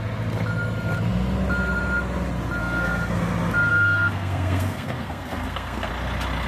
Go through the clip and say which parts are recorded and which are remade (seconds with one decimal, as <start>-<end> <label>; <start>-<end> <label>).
0.0-2.6 recorded; 2.6-3.3 remade; 3.3-3.7 recorded; 3.7-5.9 remade; 5.9-6.5 recorded